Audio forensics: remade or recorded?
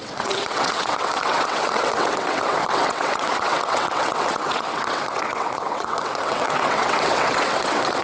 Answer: remade